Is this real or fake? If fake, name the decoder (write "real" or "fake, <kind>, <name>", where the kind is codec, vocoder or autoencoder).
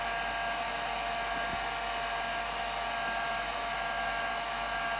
real